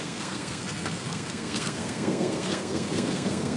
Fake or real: fake